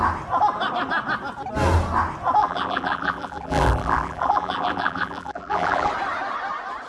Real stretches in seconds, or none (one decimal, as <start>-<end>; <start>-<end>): 0.0-2.4; 5.9-6.9